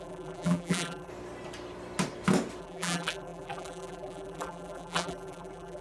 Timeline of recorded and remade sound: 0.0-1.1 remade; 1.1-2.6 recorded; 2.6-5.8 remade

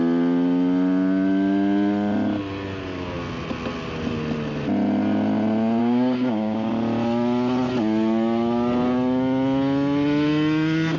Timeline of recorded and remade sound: 0.0-5.8 recorded; 5.8-6.7 remade; 6.7-11.0 recorded

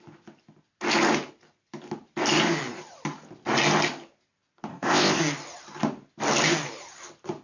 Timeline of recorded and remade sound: 0.0-4.7 recorded; 4.7-5.2 remade; 5.2-7.4 recorded

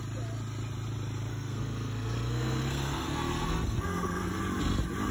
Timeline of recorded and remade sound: 0.0-1.3 recorded; 1.3-4.4 remade; 4.4-5.1 recorded